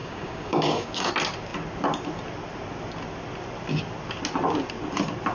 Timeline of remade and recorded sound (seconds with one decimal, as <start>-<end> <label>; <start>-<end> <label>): 0.0-1.1 remade; 1.1-5.3 recorded